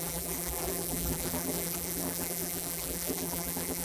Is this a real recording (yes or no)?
no